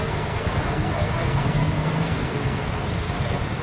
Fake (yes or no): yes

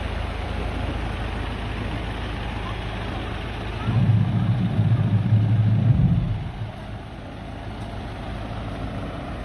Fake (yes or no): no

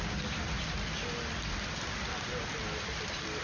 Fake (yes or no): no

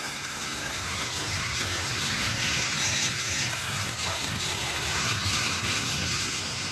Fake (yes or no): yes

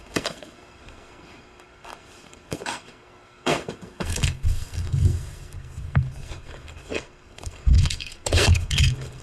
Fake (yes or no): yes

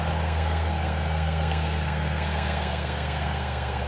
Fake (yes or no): yes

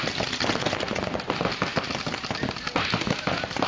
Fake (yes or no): no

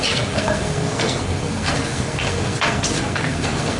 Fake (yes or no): yes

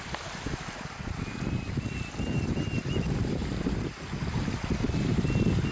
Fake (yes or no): no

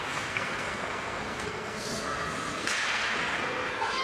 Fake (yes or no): yes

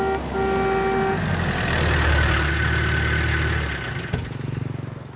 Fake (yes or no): no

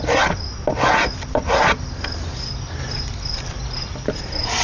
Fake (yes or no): no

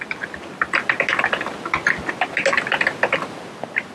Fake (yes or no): no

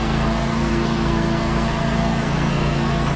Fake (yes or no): yes